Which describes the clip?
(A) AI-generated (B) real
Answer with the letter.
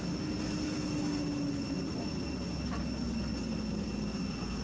B